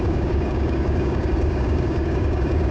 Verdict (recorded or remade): remade